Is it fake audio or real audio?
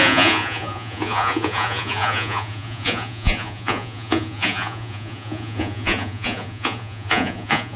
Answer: fake